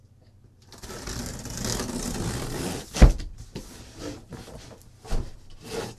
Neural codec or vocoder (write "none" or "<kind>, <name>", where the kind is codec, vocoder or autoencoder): none